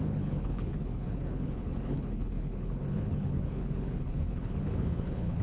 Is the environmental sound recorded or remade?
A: remade